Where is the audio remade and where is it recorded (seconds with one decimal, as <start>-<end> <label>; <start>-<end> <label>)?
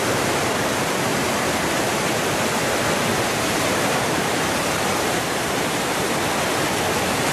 0.0-3.1 recorded; 3.1-6.1 remade; 6.1-7.3 recorded